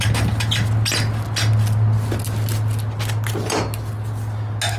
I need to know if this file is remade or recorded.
recorded